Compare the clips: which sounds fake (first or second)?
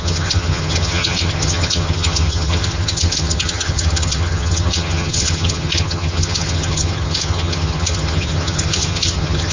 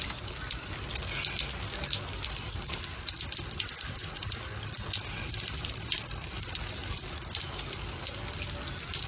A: first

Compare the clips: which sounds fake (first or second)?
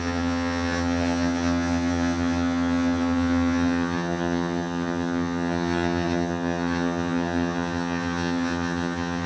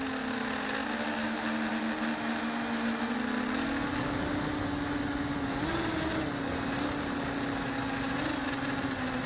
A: first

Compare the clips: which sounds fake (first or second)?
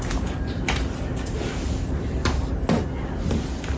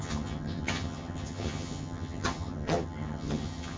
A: second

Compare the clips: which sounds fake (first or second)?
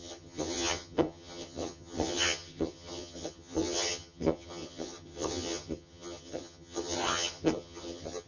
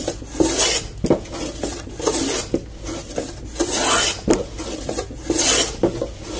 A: first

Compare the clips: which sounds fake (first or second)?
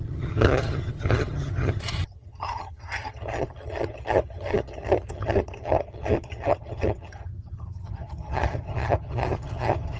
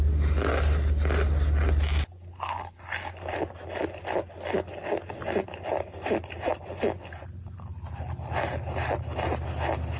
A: first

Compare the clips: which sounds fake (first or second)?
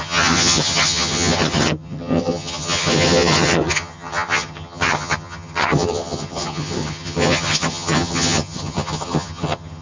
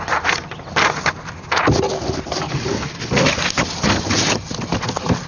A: first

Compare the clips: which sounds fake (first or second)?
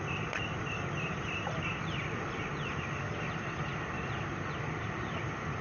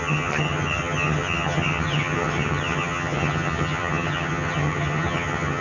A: second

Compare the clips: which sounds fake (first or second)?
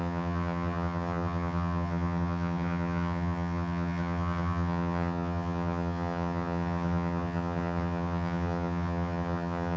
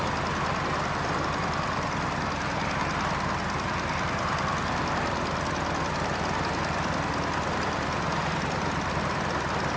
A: first